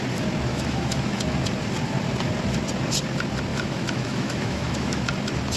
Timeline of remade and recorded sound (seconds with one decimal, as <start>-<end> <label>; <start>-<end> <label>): 0.0-0.5 recorded; 0.5-1.2 remade; 1.2-3.5 recorded; 3.5-5.0 remade; 5.0-5.6 recorded